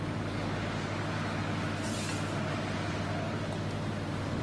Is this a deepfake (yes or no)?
no